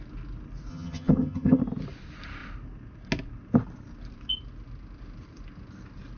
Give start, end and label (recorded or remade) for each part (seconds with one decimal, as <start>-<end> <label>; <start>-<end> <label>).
0.0-0.7 recorded; 0.7-1.6 remade; 1.6-6.2 recorded